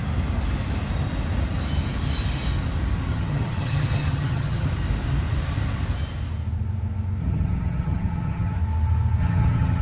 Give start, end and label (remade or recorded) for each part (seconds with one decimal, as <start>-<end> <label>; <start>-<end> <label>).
0.0-3.1 recorded; 3.1-4.7 remade; 4.7-7.2 recorded; 7.2-8.6 remade; 8.6-9.2 recorded; 9.2-9.8 remade